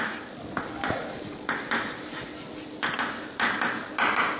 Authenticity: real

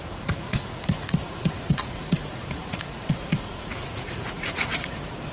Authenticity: fake